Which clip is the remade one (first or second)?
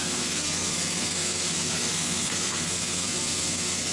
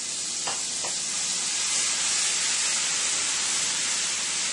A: first